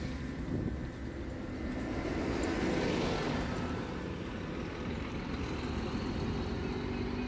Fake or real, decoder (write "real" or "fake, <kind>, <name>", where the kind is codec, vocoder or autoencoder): real